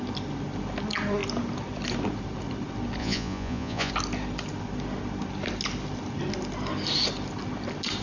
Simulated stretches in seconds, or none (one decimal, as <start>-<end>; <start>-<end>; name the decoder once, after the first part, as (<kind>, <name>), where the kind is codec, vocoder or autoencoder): 3.0-3.9 (vocoder, Vocos)